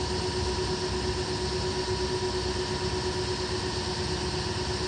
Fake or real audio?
real